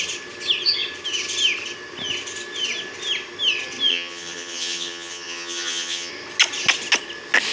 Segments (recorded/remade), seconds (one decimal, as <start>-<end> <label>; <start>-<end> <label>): 0.0-3.9 recorded; 3.9-6.1 remade; 6.1-7.5 recorded